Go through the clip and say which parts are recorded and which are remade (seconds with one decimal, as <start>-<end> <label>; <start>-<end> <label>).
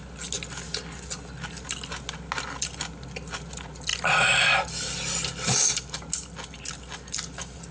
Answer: 0.0-7.7 recorded